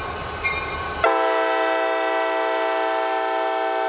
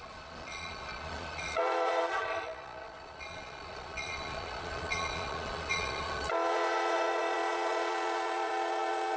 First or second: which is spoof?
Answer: second